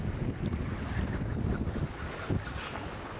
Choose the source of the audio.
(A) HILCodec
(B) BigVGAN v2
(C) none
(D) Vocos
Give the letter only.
C